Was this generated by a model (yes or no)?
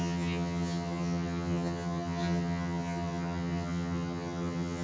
yes